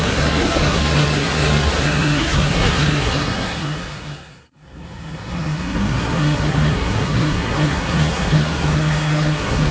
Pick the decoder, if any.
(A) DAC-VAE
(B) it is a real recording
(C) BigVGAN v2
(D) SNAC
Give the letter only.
D